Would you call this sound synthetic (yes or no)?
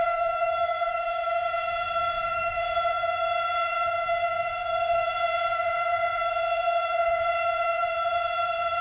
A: yes